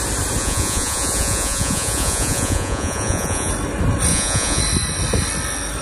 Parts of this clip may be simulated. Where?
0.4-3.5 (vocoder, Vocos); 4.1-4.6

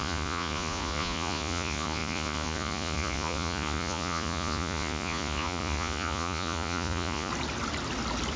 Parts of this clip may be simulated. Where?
0.0-7.3 (vocoder, Vocos)

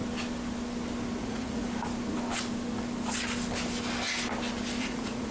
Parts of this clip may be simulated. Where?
1.2-1.6 (vocoder, Vocos); 4.8-5.3